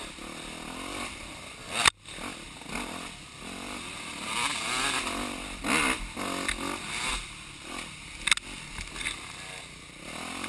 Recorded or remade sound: recorded